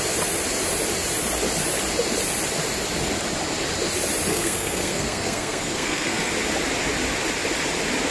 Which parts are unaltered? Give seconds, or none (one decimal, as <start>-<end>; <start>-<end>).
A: 0.0-4.3; 6.3-8.1